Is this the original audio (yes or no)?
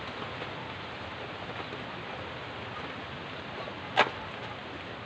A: yes